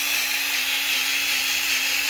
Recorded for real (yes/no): yes